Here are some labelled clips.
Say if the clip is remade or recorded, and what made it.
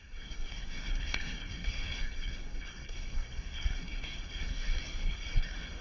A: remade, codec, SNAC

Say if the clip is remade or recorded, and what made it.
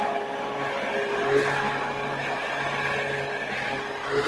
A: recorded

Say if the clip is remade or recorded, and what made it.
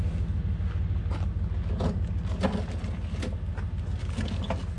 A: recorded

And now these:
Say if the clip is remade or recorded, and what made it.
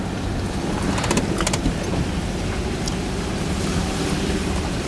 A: remade, vocoder, BigVGAN v2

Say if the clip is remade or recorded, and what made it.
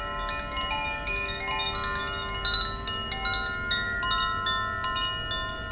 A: recorded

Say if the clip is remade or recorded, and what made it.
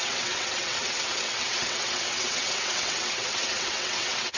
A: remade, vocoder, WaveNeXt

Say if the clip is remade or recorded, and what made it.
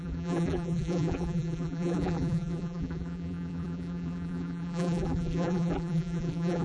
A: remade, vocoder, BigVGAN v2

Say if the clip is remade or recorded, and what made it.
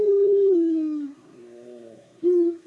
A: remade, codec, SNAC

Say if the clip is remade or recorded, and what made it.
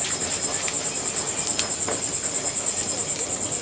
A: recorded